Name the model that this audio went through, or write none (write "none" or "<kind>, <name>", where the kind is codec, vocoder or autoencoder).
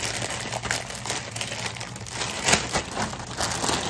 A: none